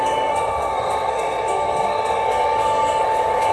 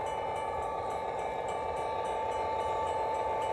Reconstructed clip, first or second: first